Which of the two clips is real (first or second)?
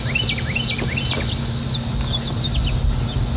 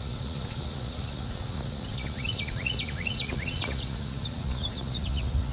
first